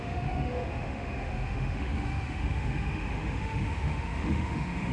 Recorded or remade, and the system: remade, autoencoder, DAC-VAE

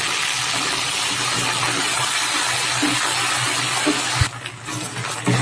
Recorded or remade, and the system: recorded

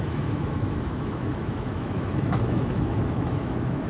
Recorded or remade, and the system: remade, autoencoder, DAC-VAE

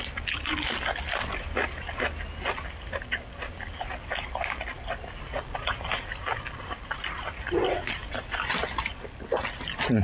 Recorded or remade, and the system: recorded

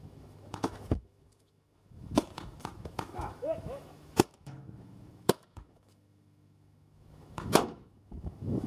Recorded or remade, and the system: remade, autoencoder, DAC-VAE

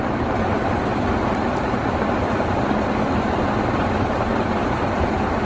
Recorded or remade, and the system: recorded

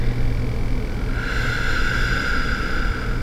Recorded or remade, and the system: recorded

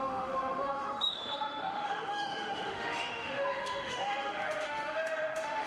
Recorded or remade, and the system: remade, autoencoder, DAC-VAE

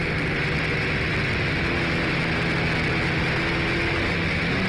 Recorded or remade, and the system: recorded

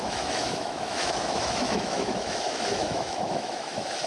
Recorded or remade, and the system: remade, autoencoder, DAC-VAE